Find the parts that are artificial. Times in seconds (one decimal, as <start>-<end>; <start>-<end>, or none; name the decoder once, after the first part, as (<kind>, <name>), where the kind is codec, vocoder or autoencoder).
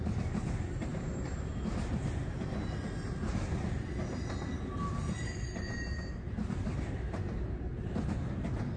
none